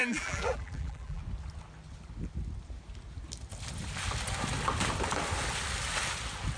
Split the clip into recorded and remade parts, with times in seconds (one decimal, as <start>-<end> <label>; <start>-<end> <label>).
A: 0.0-1.2 remade; 1.2-6.6 recorded